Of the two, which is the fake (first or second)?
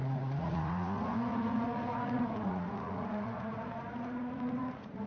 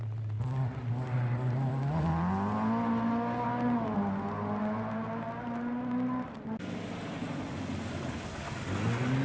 first